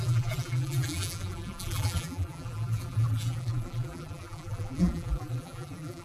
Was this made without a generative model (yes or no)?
no